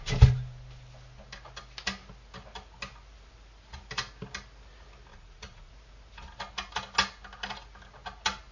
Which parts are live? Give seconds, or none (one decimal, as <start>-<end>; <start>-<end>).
0.0-5.1; 5.7-8.5